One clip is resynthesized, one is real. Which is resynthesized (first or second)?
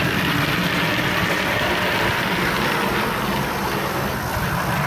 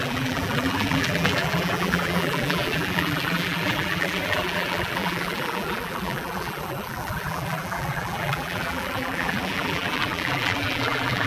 second